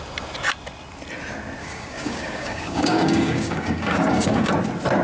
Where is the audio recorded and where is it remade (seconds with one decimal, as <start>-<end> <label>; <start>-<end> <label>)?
0.0-1.6 recorded; 1.6-4.5 remade; 4.5-5.0 recorded